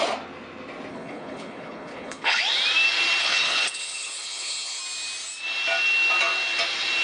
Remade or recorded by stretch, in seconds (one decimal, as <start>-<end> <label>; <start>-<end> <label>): 0.0-0.9 recorded; 0.9-2.4 remade; 2.4-3.2 recorded; 3.2-4.8 remade; 4.8-7.0 recorded